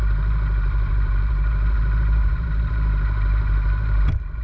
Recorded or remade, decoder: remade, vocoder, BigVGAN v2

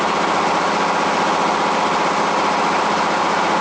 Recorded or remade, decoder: recorded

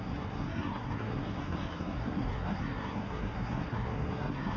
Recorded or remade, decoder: remade, codec, SNAC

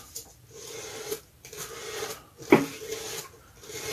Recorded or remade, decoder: recorded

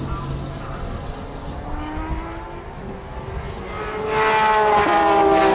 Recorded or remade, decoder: recorded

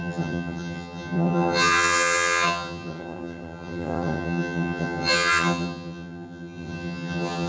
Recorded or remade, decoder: remade, vocoder, HiFi-GAN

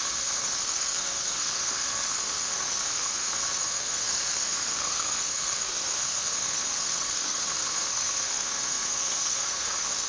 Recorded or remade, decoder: remade, codec, SNAC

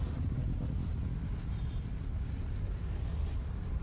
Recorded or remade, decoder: recorded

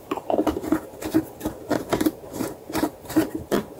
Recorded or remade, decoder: remade, vocoder, BigVGAN v2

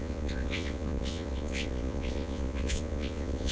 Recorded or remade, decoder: remade, vocoder, Vocos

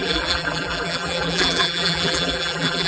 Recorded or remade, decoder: remade, vocoder, BigVGAN v2